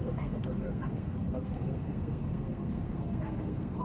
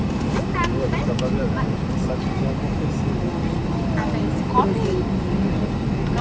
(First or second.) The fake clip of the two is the first